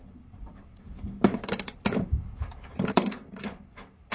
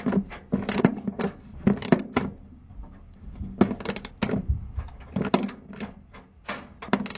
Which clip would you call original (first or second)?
second